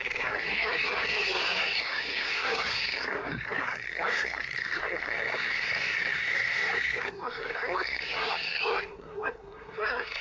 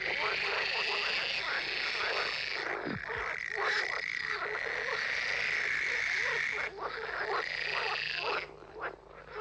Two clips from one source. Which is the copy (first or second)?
first